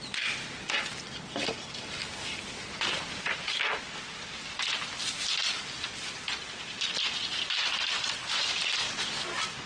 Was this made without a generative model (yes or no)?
yes